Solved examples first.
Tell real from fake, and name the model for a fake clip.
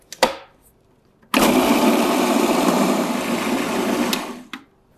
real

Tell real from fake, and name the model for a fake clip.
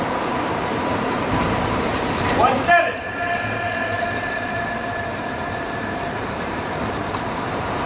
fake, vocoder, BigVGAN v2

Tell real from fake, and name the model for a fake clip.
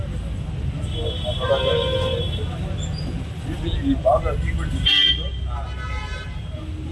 real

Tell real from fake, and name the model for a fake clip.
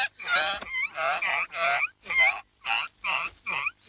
real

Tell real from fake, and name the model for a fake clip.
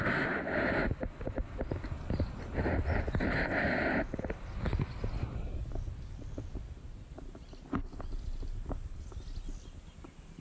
real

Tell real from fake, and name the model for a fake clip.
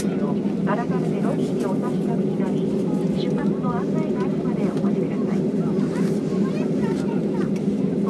real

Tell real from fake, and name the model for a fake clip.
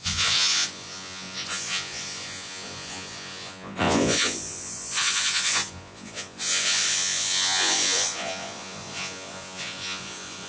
fake, vocoder, Vocos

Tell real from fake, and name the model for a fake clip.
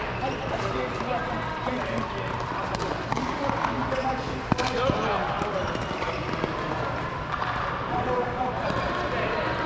real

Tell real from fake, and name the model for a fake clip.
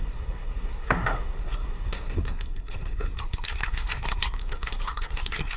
fake, codec, SNAC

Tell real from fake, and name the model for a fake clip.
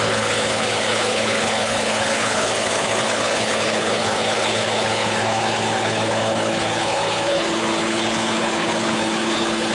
fake, codec, HILCodec